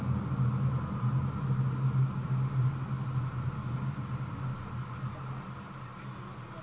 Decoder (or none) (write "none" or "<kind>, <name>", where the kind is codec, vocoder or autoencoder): none